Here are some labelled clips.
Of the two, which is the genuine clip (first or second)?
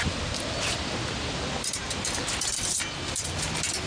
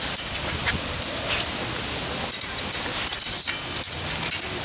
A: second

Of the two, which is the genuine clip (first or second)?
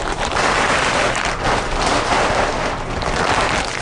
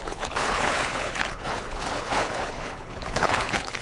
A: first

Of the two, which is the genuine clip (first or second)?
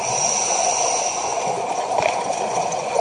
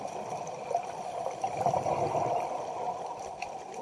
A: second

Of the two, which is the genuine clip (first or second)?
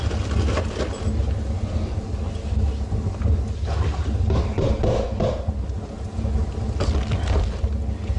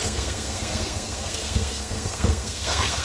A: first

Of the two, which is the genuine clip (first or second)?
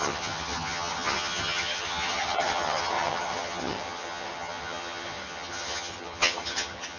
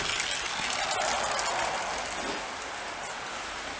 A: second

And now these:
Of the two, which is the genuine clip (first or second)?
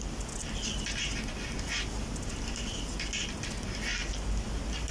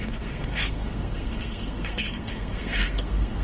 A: first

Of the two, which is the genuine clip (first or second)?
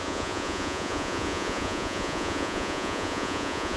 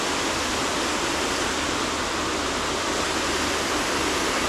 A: second